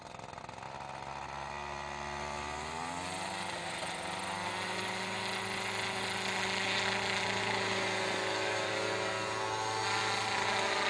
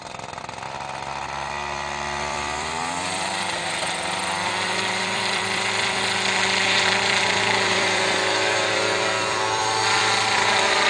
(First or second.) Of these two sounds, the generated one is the second